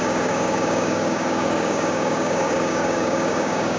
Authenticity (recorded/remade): remade